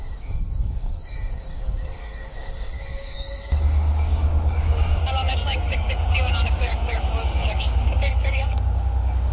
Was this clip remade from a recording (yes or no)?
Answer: yes